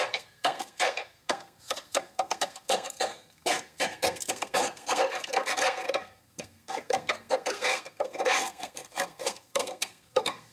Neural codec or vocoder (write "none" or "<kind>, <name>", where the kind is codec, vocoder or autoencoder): codec, SNAC